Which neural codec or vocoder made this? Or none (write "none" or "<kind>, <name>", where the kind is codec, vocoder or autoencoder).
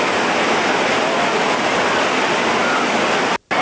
none